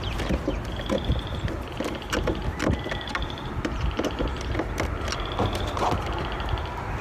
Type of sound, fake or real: real